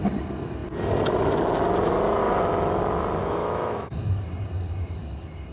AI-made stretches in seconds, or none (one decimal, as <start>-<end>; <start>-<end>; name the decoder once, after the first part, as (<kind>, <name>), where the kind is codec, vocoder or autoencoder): 2.2-2.8 (autoencoder, DAC-VAE); 3.2-4.1